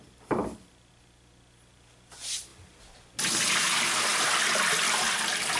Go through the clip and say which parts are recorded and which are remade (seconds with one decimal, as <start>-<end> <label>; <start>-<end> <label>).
0.0-5.6 recorded